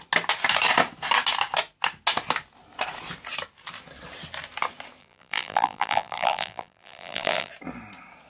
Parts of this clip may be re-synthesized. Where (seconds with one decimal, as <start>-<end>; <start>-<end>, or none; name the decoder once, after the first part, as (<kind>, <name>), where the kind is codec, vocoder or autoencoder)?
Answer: 5.0-7.5 (vocoder, BigVGAN v2)